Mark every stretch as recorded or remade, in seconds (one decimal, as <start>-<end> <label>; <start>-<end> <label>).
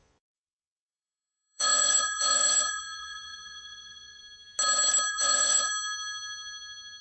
0.0-4.2 remade; 4.2-5.1 recorded; 5.1-5.7 remade; 5.7-7.0 recorded